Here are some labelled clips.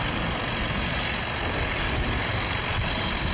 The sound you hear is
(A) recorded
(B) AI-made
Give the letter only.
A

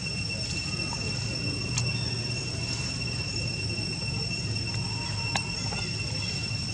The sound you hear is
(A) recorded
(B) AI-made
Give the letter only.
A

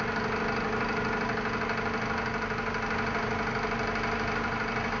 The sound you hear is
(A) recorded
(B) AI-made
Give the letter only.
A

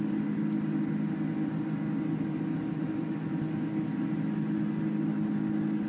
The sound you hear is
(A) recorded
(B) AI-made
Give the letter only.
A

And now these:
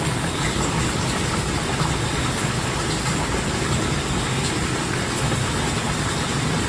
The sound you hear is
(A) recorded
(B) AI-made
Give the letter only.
A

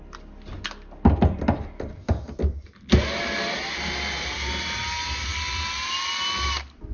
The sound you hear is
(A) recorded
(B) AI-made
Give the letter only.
A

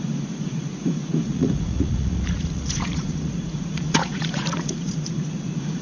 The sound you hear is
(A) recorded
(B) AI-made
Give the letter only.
B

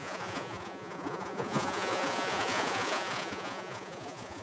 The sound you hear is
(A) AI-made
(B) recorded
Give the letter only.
A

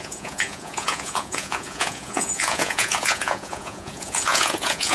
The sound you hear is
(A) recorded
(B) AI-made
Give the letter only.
B